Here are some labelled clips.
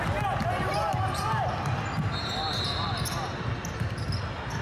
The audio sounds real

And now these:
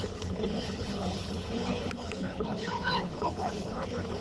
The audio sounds fake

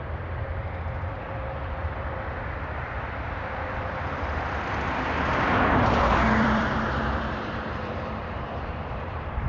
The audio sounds fake